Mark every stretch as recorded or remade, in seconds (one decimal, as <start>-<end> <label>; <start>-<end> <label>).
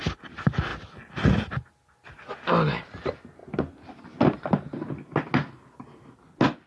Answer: 0.0-6.7 recorded